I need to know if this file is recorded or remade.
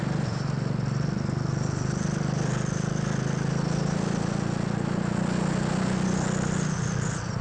recorded